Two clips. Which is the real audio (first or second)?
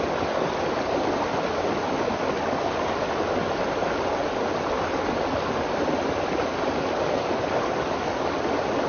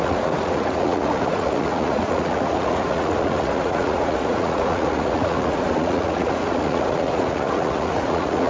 first